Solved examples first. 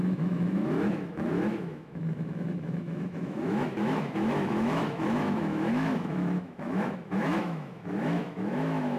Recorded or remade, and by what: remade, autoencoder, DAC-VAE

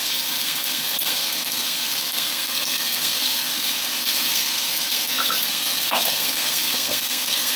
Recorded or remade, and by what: remade, codec, SNAC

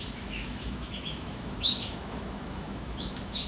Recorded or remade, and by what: remade, autoencoder, DAC-VAE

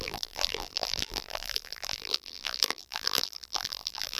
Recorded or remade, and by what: remade, vocoder, BigVGAN v2